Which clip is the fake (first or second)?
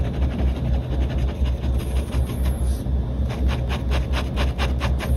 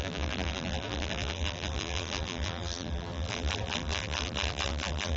second